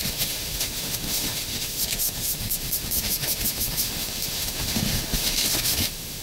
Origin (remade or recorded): remade